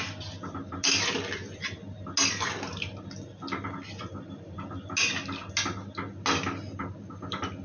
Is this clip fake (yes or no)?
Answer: no